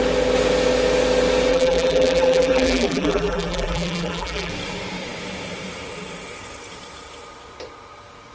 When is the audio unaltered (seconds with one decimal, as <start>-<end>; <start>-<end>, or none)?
0.0-1.5; 4.5-8.3